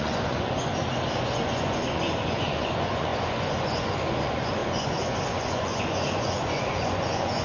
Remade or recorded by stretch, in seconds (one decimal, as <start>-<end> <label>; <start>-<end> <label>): 0.0-0.7 remade; 0.7-1.2 recorded; 1.2-7.4 remade